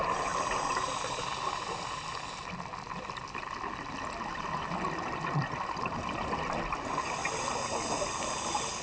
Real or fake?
real